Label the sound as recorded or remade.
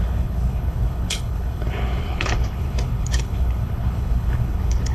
remade